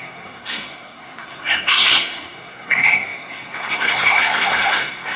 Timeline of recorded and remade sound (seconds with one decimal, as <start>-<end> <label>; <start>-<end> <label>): 0.0-5.2 remade